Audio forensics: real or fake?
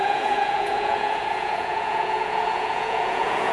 fake